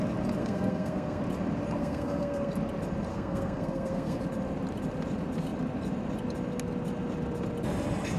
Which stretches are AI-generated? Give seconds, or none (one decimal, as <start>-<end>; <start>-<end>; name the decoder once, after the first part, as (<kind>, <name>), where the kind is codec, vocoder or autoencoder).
0.4-1.2 (codec, SNAC); 1.8-2.5; 3.1-4.2